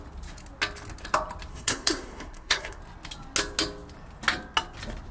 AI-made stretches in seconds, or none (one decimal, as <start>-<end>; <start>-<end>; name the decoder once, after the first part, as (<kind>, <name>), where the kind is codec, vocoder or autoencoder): 1.5-2.8 (codec, SNAC)